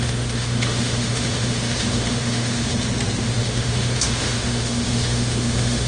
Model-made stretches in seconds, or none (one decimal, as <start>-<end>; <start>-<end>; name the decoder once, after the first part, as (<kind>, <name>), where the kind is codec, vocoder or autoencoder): 0.0-2.7 (autoencoder, DAC-VAE); 3.2-5.9

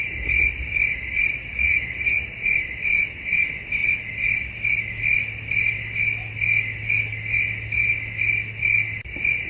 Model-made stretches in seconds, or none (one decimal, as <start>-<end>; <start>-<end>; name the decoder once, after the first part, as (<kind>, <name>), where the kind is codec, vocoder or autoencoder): 1.4-2.3 (vocoder, Vocos)

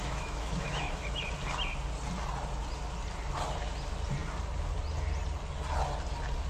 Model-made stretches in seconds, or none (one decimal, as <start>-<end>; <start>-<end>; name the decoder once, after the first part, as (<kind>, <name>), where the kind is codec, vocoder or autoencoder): 0.0-1.2 (autoencoder, DAC-VAE)

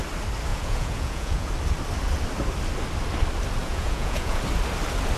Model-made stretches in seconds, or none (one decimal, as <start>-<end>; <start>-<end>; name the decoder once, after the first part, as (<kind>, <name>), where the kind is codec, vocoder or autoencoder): 0.5-1.5 (vocoder, Vocos); 3.6-4.4

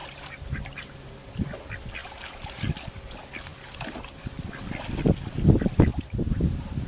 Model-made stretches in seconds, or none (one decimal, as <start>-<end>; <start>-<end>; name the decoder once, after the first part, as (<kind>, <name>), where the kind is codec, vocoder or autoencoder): 0.0-0.9 (vocoder, BigVGAN v2); 2.0-2.7; 5.9-6.5

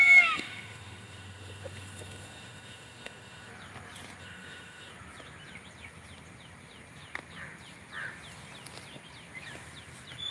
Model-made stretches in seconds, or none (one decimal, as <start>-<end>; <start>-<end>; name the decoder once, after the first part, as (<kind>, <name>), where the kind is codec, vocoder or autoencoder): 0.0-3.5 (autoencoder, DAC-VAE); 4.2-4.9